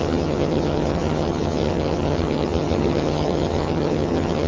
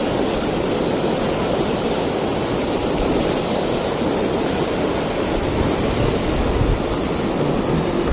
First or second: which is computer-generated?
first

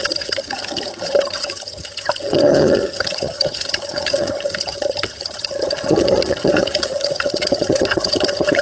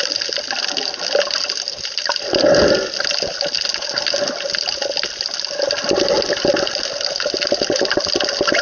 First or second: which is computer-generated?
first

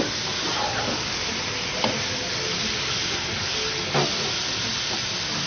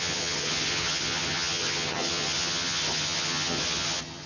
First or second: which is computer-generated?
second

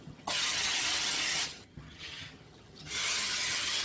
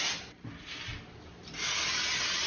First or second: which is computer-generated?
first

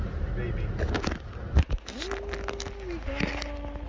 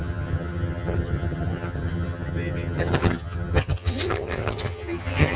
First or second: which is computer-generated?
second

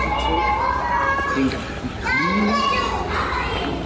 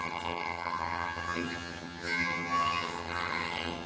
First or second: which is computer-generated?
second